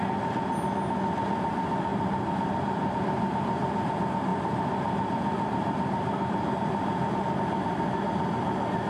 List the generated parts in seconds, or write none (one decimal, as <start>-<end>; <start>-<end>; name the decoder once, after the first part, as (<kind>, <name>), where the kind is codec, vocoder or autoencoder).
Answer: 1.9-3.9 (vocoder, BigVGAN v2); 4.3-7.2